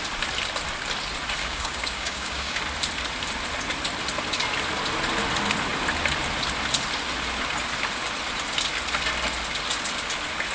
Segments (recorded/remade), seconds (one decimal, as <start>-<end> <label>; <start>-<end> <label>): 0.0-1.4 recorded; 1.4-2.6 remade; 2.6-10.5 recorded